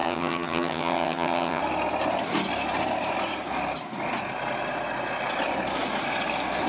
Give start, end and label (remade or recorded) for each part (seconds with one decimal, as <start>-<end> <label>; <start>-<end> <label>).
0.0-1.6 remade; 1.6-6.7 recorded